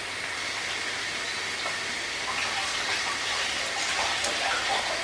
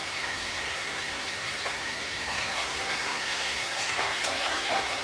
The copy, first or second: second